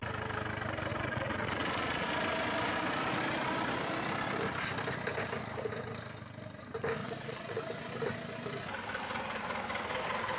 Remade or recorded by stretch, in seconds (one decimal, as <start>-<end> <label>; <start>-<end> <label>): 0.0-0.9 recorded; 0.9-2.1 remade; 2.1-7.0 recorded; 7.0-7.6 remade; 7.6-10.4 recorded